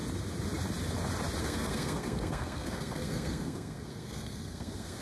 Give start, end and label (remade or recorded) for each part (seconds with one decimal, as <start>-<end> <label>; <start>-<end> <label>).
0.0-1.4 recorded; 1.4-5.0 remade